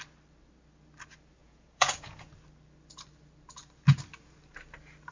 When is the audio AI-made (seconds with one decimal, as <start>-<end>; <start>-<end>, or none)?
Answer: 1.4-2.3